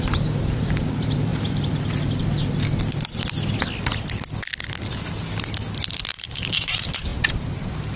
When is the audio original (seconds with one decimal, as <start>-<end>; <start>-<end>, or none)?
1.3-6.1

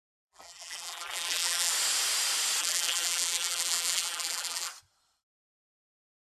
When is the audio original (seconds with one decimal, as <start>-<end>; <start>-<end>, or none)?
1.7-2.6; 4.7-6.3

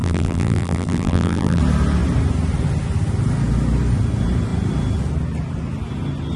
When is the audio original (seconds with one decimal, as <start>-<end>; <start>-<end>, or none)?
1.6-6.4

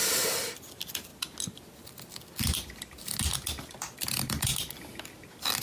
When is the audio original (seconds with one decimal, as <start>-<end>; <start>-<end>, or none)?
0.0-4.5; 5.1-5.6

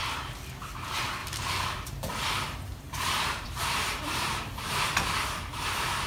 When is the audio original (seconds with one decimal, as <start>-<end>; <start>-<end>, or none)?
0.0-1.2; 4.8-6.1

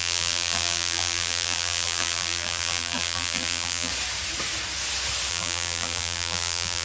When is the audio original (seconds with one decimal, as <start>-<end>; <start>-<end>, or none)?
3.9-5.3